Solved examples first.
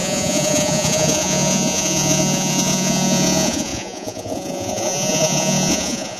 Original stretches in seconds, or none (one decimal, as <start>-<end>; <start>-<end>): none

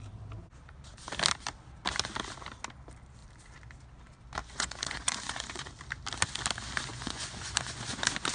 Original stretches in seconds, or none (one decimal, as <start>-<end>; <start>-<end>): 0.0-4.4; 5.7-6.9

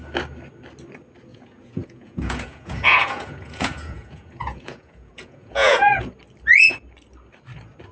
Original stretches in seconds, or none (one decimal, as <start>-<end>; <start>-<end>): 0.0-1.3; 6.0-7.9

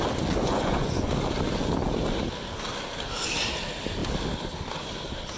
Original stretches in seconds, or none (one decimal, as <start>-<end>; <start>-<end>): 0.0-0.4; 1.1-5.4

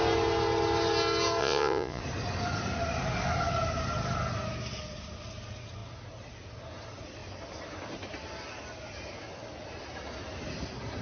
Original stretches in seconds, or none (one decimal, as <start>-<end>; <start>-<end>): 0.0-1.4; 2.0-11.0

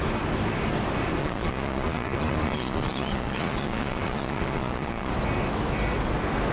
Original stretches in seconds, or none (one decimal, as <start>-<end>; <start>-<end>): 0.0-1.2; 5.1-6.5

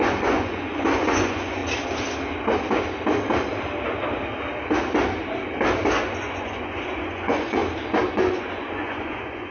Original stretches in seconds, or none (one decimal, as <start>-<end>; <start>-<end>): 1.6-6.0; 7.6-8.1